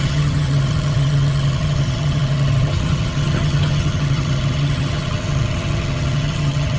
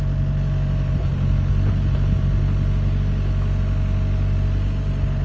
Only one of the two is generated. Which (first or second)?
first